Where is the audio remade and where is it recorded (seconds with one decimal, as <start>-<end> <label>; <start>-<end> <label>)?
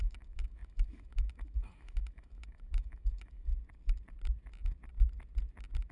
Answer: 0.0-3.5 remade; 3.5-5.9 recorded